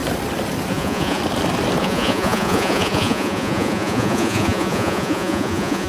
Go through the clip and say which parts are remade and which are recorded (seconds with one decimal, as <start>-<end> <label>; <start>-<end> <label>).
0.0-0.7 recorded; 0.7-1.2 remade; 1.2-1.8 recorded; 1.8-5.9 remade